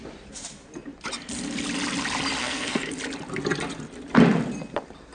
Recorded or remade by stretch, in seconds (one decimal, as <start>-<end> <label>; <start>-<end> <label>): 0.0-2.4 recorded; 2.4-2.9 remade; 2.9-5.1 recorded